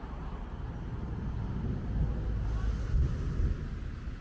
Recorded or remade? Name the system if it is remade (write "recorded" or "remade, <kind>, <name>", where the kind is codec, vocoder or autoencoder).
recorded